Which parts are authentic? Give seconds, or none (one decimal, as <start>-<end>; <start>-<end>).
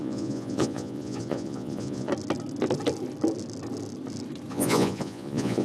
2.1-4.5